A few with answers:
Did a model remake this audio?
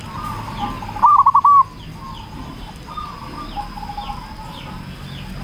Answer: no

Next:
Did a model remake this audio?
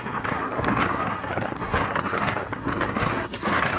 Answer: yes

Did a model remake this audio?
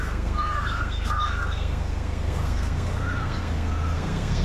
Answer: yes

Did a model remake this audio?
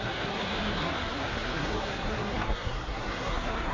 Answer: yes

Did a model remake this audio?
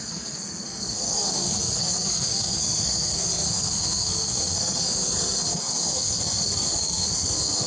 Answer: yes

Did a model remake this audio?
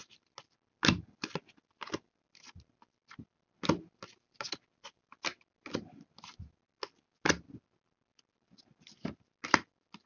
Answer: no